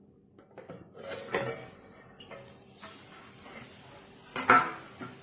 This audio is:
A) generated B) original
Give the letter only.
B